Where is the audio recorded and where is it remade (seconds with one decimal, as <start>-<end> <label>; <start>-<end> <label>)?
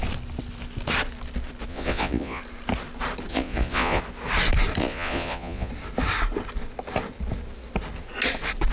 0.0-1.7 recorded; 1.7-2.4 remade; 2.4-3.3 recorded; 3.3-4.0 remade; 4.0-4.8 recorded; 4.8-5.7 remade; 5.7-8.7 recorded